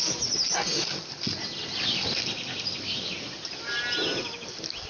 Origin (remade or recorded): recorded